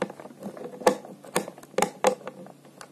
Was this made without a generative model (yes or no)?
yes